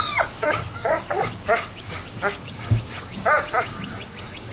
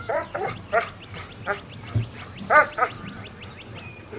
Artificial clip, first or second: first